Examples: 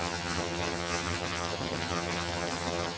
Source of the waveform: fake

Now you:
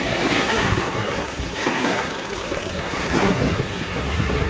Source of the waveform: fake